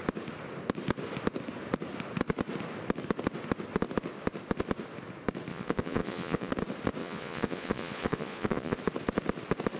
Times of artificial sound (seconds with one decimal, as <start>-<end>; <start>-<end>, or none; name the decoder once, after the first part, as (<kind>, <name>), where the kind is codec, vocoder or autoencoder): 5.5-6.5 (vocoder, Vocos); 7.0-8.8